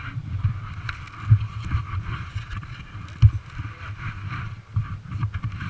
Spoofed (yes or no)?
no